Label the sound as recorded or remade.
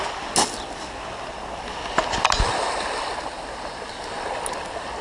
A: recorded